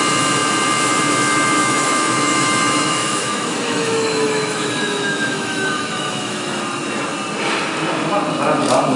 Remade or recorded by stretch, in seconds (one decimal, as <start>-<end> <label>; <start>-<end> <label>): 0.0-1.6 recorded; 1.6-6.6 remade; 6.6-9.0 recorded